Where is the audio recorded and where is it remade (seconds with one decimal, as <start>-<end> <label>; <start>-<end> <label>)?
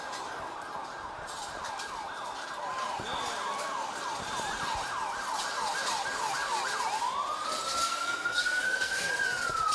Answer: 0.0-7.8 recorded; 7.8-9.1 remade; 9.1-9.7 recorded